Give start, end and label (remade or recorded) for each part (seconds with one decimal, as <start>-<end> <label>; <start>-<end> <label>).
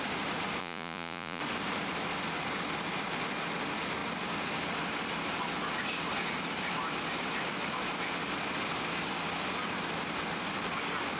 0.0-0.6 recorded; 0.6-1.4 remade; 1.4-11.2 recorded